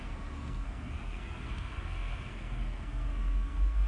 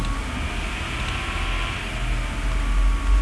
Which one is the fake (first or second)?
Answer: first